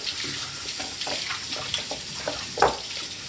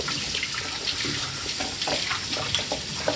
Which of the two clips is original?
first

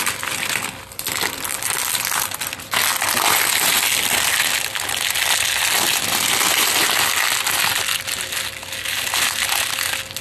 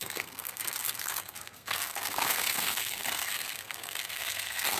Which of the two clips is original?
first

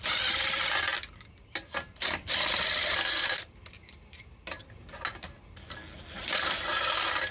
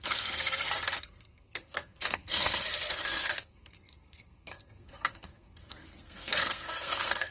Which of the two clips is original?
first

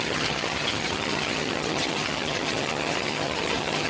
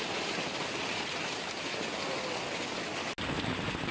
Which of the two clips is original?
second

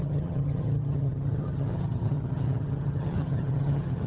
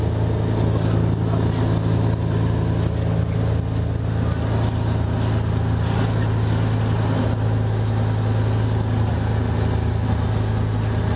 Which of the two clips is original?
second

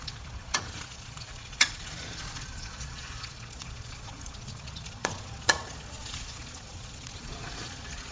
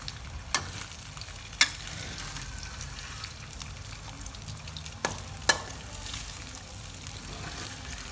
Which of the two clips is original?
second